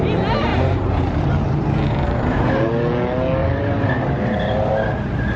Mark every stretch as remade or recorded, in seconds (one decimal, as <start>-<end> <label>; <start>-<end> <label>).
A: 0.0-0.5 recorded; 0.5-2.6 remade; 2.6-3.4 recorded; 3.4-4.7 remade; 4.7-5.4 recorded